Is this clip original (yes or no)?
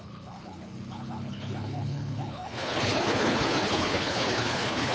no